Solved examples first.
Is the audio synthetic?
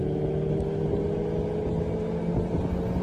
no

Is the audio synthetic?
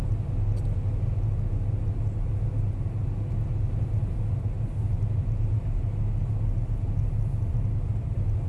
no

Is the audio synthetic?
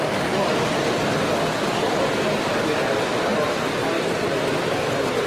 no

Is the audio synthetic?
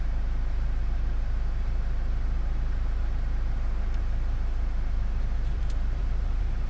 yes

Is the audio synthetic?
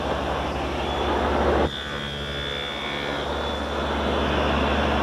no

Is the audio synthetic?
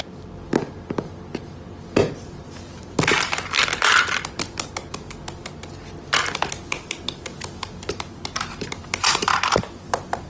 no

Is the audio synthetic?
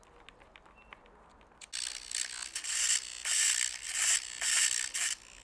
no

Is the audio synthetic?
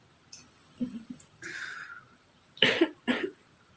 yes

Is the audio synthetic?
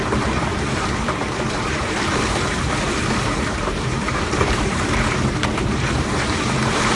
yes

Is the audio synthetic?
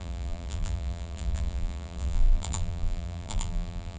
yes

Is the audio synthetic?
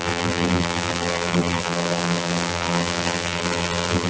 yes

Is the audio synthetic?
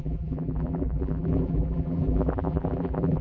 yes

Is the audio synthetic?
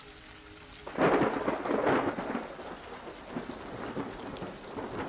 no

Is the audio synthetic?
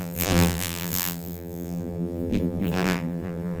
yes